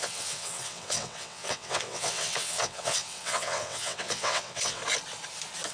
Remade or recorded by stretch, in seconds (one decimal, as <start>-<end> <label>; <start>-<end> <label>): 0.0-4.8 remade; 4.8-5.7 recorded